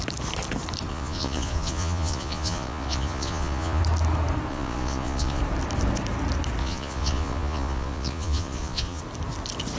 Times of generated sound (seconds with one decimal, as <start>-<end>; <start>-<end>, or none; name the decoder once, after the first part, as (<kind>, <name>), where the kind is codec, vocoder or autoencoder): 0.9-3.8 (vocoder, Vocos); 4.5-5.4; 6.6-9.0